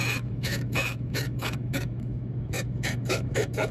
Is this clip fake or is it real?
fake